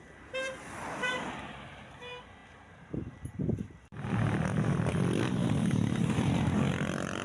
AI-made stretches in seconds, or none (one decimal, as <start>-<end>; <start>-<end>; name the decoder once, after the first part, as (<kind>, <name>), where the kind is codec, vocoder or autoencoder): 0.0-2.4 (vocoder, BigVGAN v2); 4.9-7.2